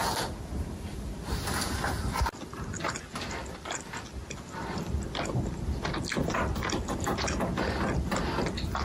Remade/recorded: recorded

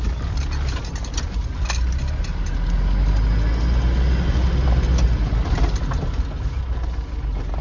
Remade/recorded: recorded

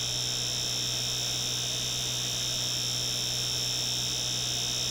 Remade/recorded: recorded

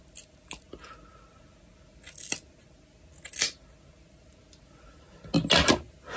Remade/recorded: recorded